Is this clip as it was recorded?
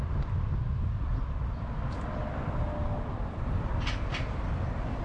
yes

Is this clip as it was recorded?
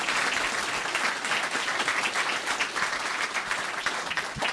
yes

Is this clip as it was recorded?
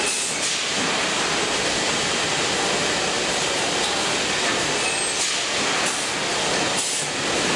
yes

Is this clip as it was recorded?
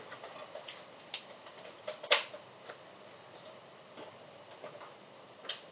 yes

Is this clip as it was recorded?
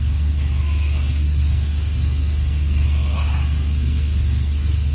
no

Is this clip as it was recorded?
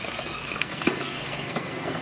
no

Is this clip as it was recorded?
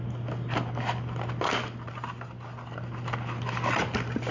yes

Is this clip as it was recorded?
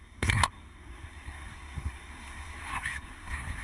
no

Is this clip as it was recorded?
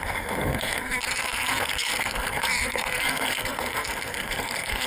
no